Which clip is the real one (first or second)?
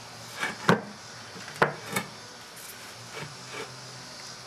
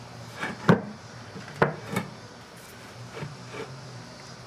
first